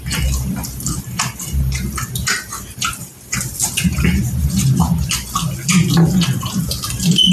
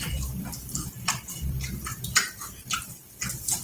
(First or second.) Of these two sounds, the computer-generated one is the second